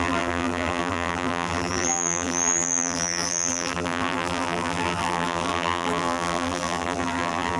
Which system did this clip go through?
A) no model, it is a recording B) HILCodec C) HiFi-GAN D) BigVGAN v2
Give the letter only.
D